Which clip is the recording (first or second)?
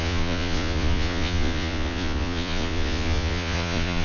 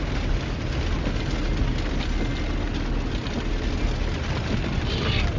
second